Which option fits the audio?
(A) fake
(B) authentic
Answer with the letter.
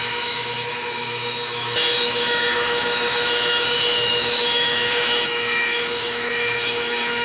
A